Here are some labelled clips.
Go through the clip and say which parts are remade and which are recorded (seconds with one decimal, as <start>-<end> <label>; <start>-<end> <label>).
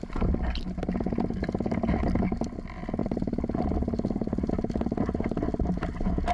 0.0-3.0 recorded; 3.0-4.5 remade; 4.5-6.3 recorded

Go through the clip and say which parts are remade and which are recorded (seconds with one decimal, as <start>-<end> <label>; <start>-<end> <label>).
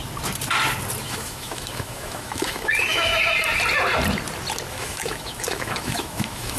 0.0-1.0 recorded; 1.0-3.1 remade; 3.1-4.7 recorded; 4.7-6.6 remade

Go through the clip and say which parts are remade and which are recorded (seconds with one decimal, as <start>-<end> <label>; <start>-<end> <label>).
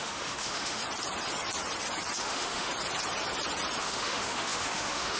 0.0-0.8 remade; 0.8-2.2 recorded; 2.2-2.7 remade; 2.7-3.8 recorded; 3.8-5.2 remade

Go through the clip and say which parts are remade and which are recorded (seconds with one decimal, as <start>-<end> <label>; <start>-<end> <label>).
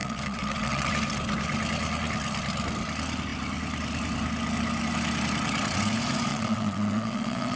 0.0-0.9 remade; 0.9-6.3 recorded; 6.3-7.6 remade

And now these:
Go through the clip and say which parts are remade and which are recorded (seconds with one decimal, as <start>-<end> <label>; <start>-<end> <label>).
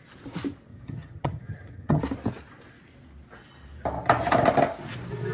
0.0-0.7 recorded; 0.7-2.0 remade; 2.0-5.3 recorded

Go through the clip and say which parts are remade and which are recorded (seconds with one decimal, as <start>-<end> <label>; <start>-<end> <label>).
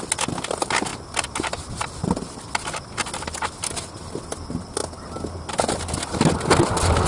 0.0-7.1 recorded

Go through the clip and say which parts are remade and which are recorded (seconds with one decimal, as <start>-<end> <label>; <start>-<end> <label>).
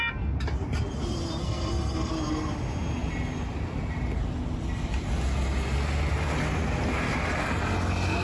0.0-1.4 recorded; 1.4-2.1 remade; 2.1-8.2 recorded